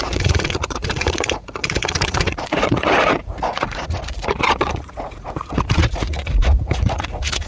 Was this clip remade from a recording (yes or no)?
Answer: yes